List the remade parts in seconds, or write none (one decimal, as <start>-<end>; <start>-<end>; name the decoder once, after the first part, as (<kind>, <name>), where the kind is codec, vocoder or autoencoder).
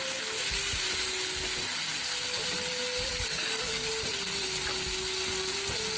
3.1-3.9 (codec, DAC)